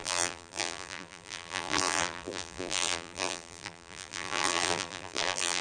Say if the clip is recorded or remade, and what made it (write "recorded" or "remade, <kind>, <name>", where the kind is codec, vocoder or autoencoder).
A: remade, vocoder, BigVGAN v2